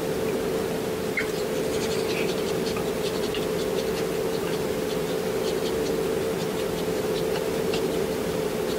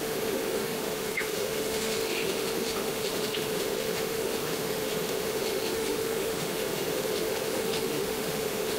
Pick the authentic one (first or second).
first